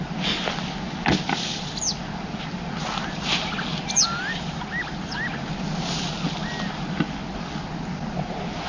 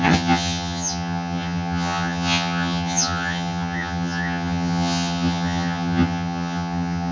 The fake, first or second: second